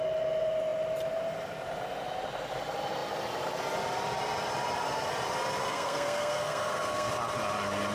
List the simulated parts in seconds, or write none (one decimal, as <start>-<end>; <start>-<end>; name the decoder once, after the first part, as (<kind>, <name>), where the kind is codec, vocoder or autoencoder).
5.7-7.1 (codec, SNAC)